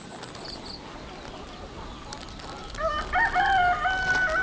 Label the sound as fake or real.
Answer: real